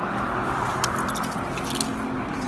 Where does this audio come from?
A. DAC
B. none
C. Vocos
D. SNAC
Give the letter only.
B